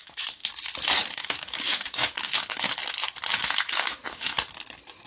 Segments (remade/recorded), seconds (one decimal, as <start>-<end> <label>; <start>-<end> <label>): 0.0-0.4 remade; 0.4-1.1 recorded; 1.1-2.8 remade; 2.8-3.3 recorded; 3.3-4.3 remade; 4.3-5.1 recorded